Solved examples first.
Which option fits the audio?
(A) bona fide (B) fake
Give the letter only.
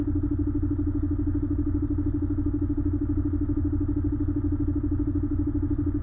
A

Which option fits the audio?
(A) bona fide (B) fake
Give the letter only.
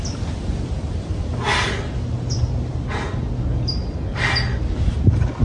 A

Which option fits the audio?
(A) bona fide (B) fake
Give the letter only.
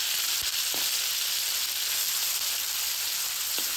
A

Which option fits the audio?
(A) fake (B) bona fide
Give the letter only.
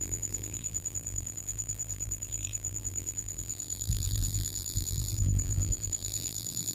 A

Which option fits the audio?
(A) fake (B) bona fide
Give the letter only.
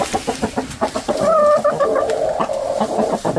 B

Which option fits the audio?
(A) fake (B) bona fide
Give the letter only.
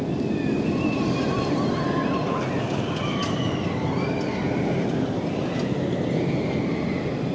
B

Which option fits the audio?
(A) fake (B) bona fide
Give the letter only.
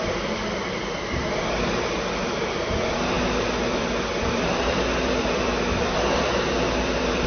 A